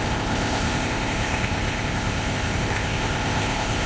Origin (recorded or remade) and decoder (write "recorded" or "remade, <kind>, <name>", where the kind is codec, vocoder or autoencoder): remade, codec, ZipCodec